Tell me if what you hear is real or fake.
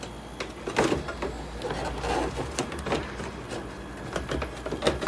real